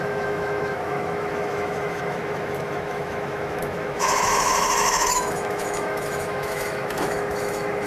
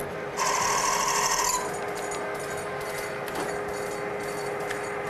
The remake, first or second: first